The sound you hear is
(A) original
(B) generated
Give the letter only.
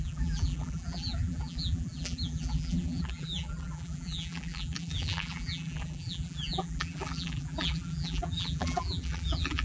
B